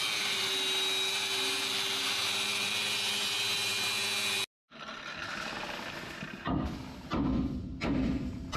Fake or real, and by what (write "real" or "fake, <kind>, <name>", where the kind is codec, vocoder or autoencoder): real